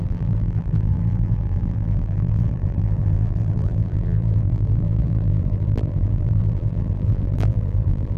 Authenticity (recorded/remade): remade